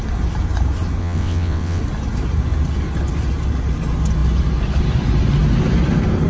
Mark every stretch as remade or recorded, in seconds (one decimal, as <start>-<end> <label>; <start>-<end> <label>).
0.0-1.0 recorded; 1.0-1.8 remade; 1.8-6.3 recorded